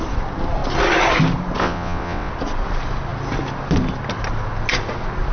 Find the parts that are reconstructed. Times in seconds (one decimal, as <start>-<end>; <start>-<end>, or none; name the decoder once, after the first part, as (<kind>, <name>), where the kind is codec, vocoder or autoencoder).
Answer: 1.6-2.3 (vocoder, WaveNeXt)